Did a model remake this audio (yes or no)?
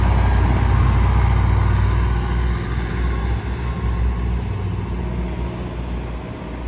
no